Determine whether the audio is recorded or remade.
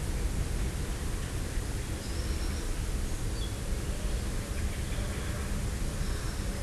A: recorded